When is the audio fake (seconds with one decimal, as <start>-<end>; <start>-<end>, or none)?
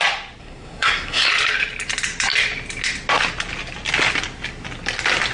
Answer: 0.4-1.3